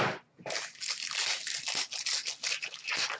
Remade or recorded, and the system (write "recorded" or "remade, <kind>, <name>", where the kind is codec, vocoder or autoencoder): recorded